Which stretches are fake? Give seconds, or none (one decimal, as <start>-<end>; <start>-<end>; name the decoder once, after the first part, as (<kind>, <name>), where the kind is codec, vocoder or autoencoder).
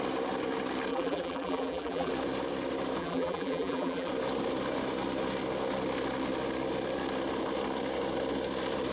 0.9-2.1 (vocoder, BigVGAN v2); 3.0-4.1